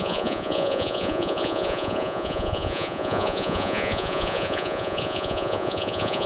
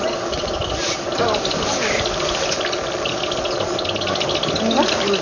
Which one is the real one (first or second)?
second